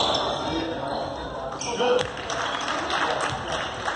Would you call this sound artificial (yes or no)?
no